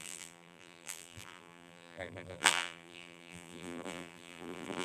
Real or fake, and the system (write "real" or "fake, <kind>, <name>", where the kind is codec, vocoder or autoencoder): fake, vocoder, BigVGAN v2